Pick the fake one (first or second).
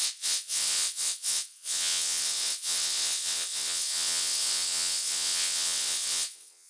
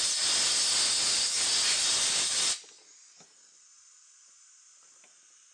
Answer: first